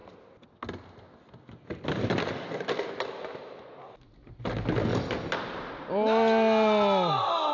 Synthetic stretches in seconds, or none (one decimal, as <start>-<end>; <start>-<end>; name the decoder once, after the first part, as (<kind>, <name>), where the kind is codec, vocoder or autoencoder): 4.9-5.4 (vocoder, BigVGAN v2)